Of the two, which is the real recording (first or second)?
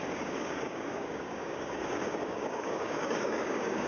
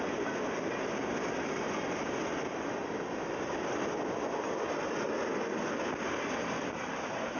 second